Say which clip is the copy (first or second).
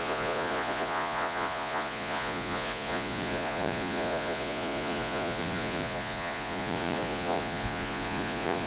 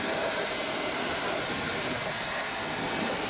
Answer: first